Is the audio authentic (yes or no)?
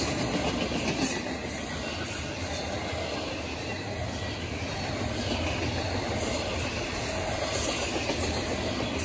yes